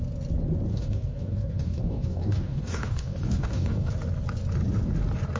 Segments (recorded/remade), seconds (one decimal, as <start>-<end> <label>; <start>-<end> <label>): 0.0-0.7 recorded; 0.7-3.9 remade; 3.9-5.4 recorded